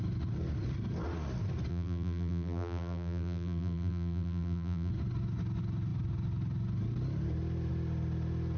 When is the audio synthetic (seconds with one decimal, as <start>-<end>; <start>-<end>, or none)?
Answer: 1.7-4.9